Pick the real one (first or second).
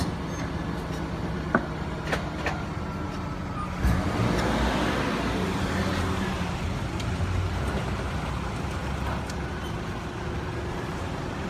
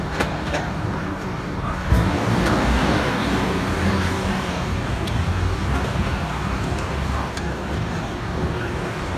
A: first